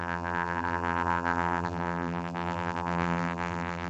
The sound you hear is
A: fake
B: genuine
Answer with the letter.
A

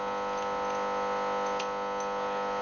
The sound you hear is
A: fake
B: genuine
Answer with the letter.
B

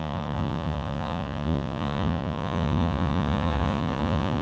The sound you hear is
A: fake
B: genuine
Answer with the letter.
A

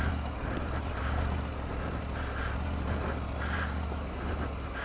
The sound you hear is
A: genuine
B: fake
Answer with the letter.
A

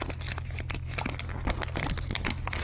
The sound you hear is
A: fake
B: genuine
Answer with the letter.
B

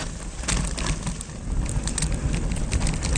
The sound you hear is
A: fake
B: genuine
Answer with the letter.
B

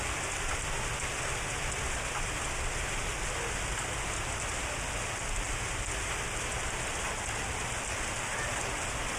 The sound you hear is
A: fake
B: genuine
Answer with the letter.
B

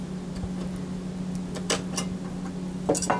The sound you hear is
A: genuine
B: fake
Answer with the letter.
A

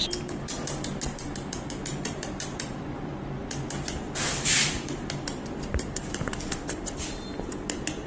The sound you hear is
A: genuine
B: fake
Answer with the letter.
A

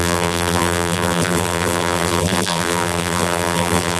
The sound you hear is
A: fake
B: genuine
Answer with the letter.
A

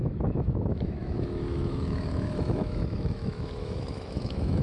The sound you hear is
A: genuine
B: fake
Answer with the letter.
B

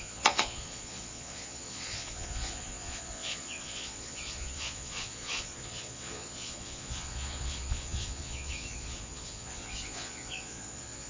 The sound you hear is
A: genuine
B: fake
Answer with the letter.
B